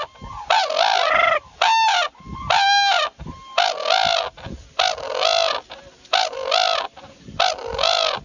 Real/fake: real